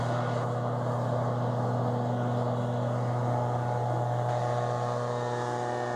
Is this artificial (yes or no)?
no